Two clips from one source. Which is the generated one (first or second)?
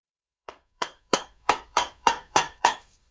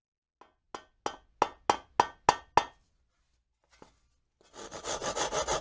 first